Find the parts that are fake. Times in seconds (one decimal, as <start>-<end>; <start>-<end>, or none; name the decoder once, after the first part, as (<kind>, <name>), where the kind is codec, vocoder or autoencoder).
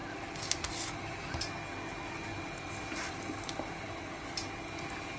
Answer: none